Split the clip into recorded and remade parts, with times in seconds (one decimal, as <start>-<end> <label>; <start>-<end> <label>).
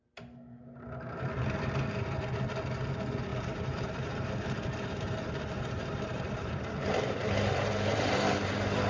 0.0-3.3 recorded; 3.3-8.5 remade; 8.5-8.9 recorded